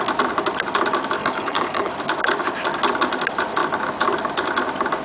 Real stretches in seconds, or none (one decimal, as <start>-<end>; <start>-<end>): 0.0-1.2; 1.9-5.0